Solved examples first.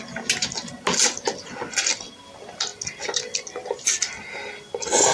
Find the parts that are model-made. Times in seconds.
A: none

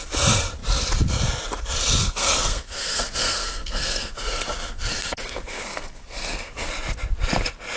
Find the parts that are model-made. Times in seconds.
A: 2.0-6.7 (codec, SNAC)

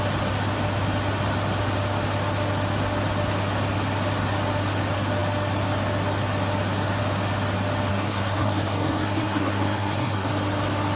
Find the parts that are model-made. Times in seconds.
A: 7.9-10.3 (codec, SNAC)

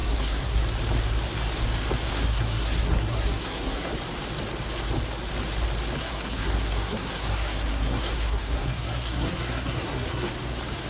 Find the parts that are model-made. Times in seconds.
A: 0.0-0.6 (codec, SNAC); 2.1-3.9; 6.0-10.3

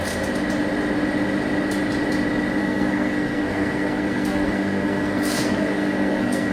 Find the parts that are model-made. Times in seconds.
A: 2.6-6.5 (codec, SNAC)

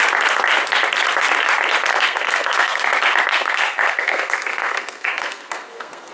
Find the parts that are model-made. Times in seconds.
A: 1.9-2.8 (codec, SNAC); 3.3-6.1

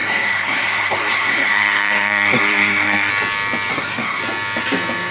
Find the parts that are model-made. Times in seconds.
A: 0.0-3.1 (codec, SNAC); 3.7-4.2

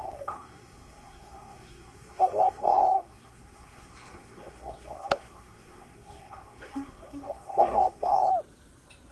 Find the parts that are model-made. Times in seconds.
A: 0.0-8.3 (codec, SNAC)